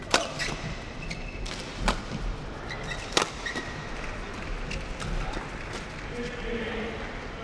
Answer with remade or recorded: recorded